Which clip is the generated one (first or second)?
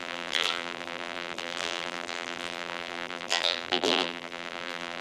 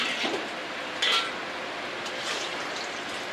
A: first